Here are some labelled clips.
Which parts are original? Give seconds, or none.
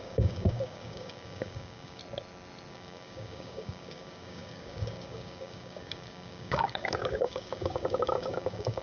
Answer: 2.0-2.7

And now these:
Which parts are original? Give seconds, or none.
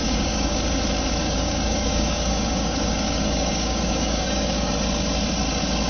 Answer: 0.6-1.2; 4.7-5.9